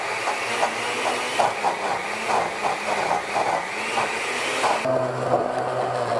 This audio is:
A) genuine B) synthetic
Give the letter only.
A